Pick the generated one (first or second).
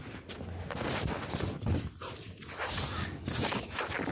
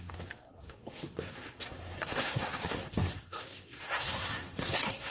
second